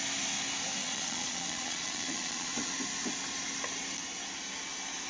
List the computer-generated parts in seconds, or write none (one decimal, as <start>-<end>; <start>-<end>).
0.8-2.7